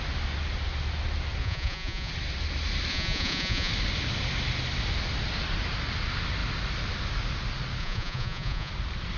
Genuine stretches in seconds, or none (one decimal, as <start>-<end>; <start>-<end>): 0.0-1.4; 2.1-2.9; 3.7-7.8; 8.7-9.2